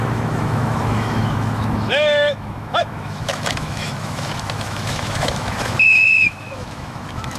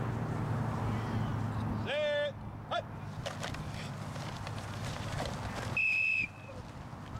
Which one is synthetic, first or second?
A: first